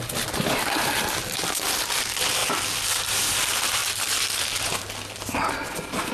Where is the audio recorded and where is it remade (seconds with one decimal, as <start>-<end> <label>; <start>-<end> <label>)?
0.0-2.4 remade; 2.4-2.9 recorded; 2.9-6.1 remade